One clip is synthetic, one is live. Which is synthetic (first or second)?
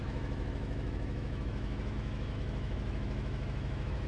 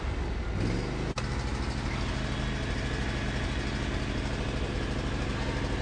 first